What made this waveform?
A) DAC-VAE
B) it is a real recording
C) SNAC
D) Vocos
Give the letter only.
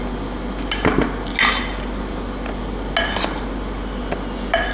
B